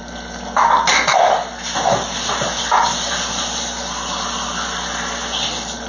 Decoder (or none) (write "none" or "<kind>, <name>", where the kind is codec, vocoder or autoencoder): none